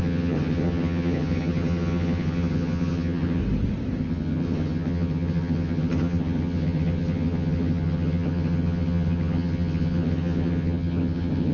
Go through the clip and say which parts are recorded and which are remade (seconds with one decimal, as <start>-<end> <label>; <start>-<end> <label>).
0.0-3.4 remade; 3.4-4.0 recorded; 4.0-11.5 remade